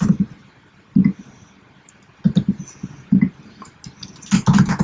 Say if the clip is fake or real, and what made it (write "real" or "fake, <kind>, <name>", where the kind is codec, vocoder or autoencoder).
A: real